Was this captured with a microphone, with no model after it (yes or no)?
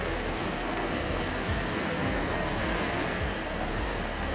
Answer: no